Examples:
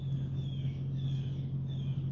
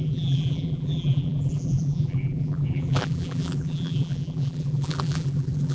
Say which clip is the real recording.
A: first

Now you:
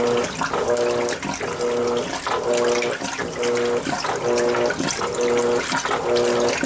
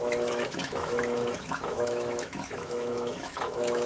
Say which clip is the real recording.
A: first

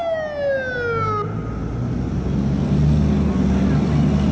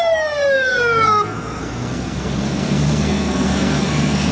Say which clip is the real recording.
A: first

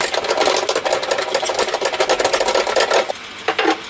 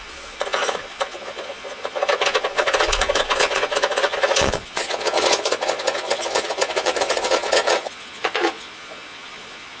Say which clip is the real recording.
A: first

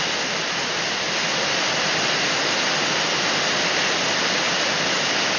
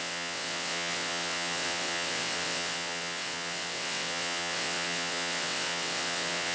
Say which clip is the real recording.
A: first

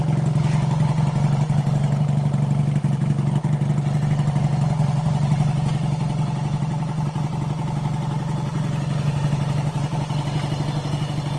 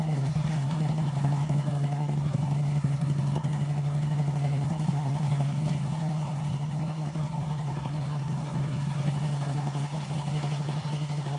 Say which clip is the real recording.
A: first